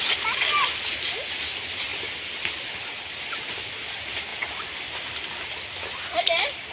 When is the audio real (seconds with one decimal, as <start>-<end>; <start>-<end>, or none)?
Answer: 0.0-6.7